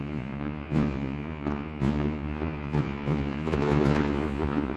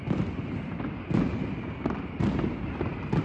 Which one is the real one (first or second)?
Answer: second